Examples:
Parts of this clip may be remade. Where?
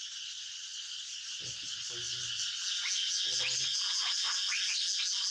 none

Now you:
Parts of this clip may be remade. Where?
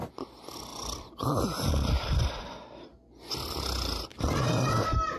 0.7-2.3; 4.1-5.2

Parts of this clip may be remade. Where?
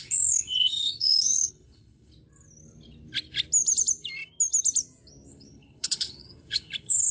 0.0-2.1; 5.3-7.1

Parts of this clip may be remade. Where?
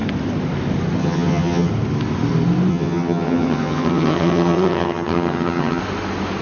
1.0-1.7; 2.7-5.8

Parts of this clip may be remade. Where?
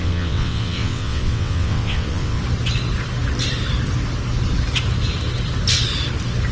0.0-2.4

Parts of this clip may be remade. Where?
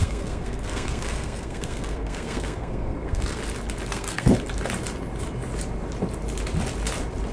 0.0-3.4; 3.9-4.3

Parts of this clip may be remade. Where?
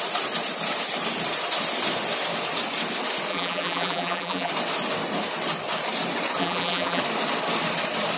3.3-4.5; 6.4-7.0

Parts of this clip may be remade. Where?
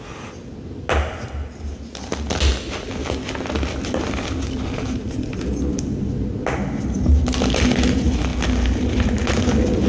none